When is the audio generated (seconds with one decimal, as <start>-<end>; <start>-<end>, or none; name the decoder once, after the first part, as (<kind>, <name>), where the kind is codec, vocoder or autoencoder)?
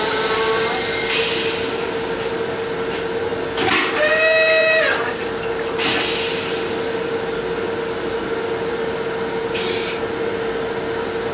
none